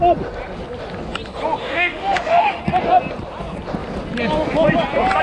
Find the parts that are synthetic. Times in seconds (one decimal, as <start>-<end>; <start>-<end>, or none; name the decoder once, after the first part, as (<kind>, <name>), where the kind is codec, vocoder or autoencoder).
1.6-2.6 (autoencoder, DAC-VAE)